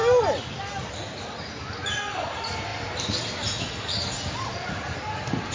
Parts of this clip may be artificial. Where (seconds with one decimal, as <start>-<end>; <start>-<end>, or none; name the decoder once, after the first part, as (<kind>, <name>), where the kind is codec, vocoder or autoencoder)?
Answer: none